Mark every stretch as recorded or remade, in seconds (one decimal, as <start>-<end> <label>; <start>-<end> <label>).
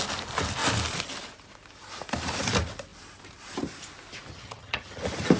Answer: 0.0-4.3 recorded; 4.3-5.0 remade; 5.0-5.4 recorded